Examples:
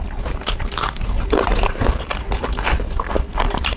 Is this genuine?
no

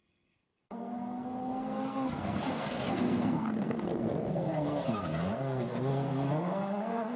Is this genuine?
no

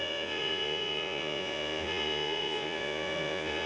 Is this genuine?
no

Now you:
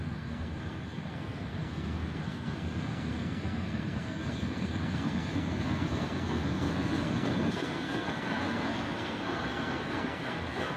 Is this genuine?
no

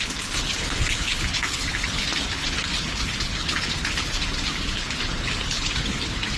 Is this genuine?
no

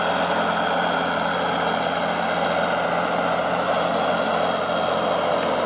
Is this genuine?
yes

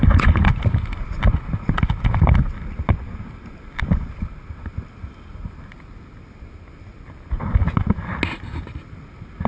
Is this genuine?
yes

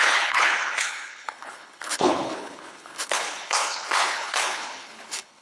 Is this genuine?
no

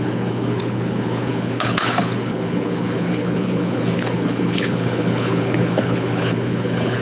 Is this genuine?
no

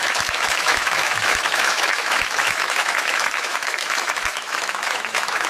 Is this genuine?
no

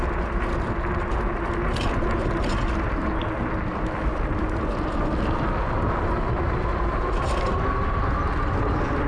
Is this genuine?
yes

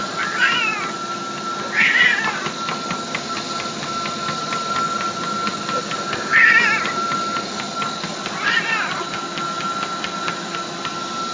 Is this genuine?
yes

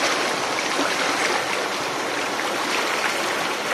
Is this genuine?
yes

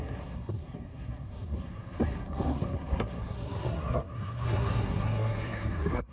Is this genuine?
no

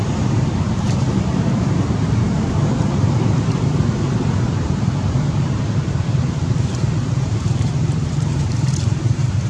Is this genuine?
no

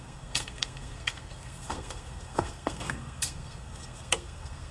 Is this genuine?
no